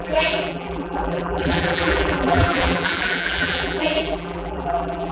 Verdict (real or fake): fake